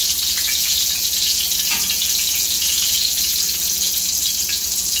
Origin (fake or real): fake